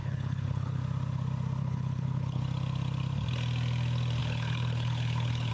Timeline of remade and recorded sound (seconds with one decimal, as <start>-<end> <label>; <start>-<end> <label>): 0.0-0.8 remade; 0.8-1.6 recorded; 1.6-2.4 remade; 2.4-4.2 recorded; 4.2-5.5 remade